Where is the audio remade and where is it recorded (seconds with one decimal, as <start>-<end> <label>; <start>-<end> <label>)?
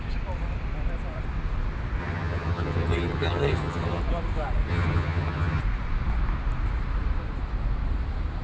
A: 0.0-2.0 recorded; 2.0-4.0 remade; 4.0-4.7 recorded; 4.7-5.6 remade; 5.6-8.4 recorded